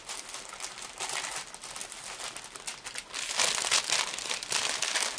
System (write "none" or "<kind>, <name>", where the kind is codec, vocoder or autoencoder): none